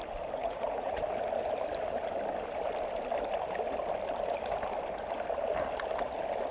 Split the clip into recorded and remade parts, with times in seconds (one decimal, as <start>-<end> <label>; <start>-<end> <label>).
0.0-0.4 recorded; 0.4-1.0 remade; 1.0-6.5 recorded